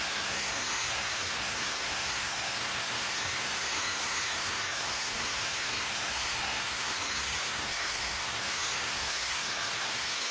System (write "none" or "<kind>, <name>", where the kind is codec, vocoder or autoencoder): codec, SNAC